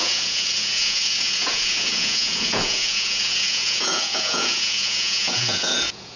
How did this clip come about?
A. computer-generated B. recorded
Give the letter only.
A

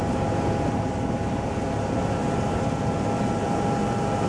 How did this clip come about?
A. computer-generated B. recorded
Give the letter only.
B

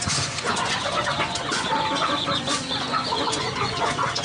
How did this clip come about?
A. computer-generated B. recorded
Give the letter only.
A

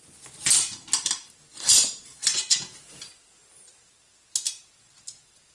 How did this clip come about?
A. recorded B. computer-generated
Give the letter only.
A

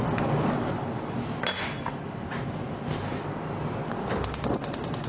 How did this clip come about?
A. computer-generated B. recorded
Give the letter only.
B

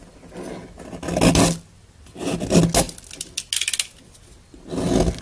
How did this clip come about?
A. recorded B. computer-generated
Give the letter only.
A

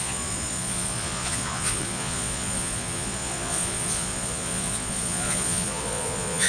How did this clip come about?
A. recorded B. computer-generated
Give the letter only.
B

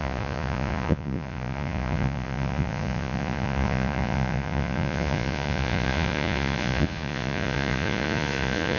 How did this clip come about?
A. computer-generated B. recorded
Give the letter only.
A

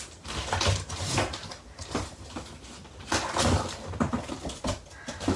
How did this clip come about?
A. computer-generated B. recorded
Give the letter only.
B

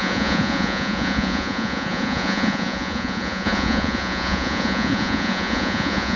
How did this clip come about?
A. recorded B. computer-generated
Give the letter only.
B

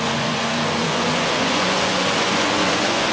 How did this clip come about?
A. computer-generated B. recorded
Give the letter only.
A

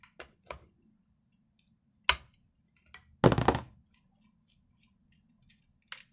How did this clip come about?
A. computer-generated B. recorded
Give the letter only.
B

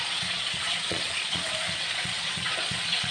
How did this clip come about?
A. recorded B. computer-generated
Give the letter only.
B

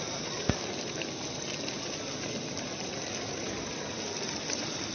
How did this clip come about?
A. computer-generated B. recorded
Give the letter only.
B